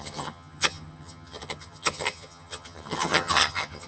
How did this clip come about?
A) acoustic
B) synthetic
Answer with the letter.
B